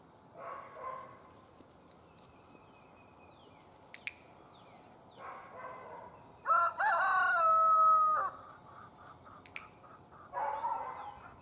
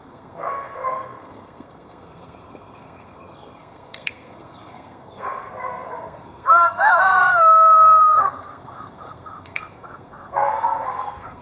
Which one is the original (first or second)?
first